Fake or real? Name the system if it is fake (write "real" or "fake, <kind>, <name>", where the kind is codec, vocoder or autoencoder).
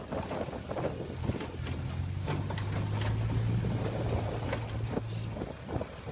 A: real